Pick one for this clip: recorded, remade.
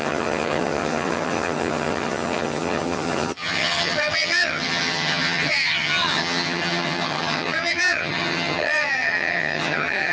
remade